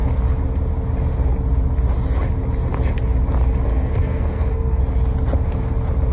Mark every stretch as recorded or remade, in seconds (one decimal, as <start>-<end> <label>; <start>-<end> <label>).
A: 0.0-3.7 recorded; 3.7-4.8 remade; 4.8-6.1 recorded